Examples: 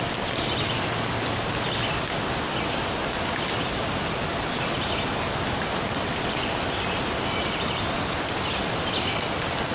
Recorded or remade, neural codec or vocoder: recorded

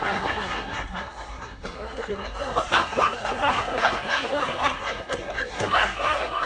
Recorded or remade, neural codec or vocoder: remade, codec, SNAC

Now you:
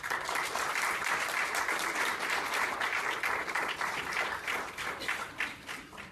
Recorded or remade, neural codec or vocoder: remade, vocoder, BigVGAN v2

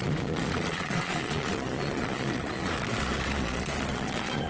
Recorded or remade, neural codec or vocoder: remade, vocoder, Vocos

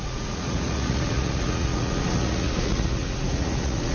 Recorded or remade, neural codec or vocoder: remade, vocoder, Vocos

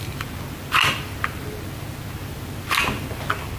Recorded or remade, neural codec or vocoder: recorded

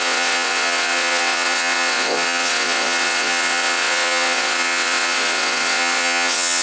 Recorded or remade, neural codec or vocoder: remade, vocoder, WaveNeXt